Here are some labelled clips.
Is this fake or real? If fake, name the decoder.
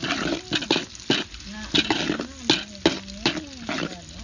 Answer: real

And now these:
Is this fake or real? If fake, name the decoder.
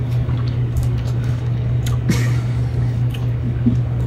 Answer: fake, codec, DAC